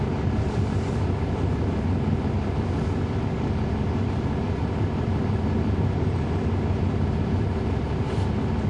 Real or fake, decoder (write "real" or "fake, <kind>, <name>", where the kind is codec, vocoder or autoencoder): real